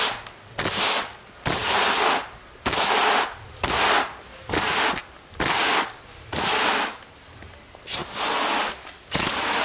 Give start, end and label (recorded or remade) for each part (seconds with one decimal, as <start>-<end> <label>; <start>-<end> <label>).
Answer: 0.0-1.6 recorded; 1.6-5.8 remade; 5.8-9.6 recorded